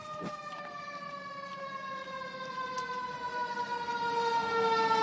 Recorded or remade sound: recorded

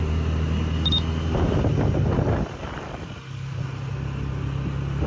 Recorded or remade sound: recorded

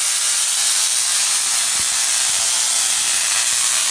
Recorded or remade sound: recorded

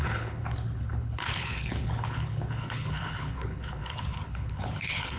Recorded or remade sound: remade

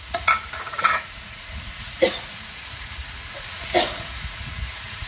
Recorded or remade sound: remade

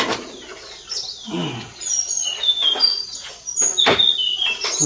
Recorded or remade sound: recorded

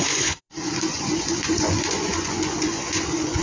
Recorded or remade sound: remade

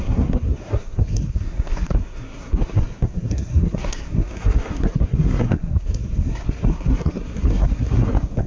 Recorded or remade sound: remade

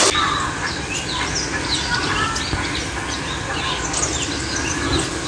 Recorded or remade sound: recorded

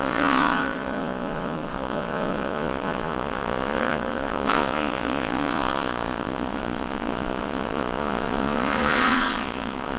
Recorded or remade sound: remade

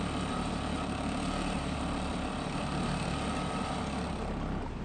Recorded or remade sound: remade